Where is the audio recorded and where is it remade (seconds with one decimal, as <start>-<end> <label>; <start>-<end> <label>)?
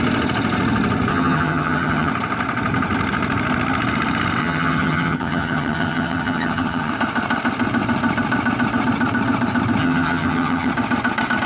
0.0-1.1 recorded; 1.1-2.1 remade; 2.1-4.4 recorded; 4.4-6.9 remade; 6.9-9.8 recorded; 9.8-10.7 remade; 10.7-11.5 recorded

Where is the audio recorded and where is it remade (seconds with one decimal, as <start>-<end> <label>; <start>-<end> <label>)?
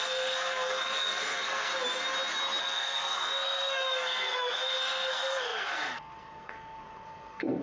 0.0-1.7 remade; 1.7-2.6 recorded; 2.6-7.6 remade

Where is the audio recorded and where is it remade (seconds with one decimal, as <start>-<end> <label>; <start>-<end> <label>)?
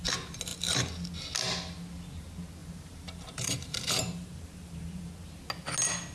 0.0-2.6 recorded; 2.6-5.1 remade; 5.1-6.1 recorded